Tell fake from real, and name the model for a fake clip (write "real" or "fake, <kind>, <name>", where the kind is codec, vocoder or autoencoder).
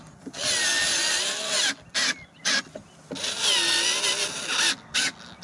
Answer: real